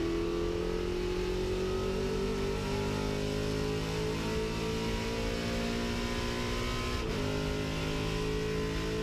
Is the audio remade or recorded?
recorded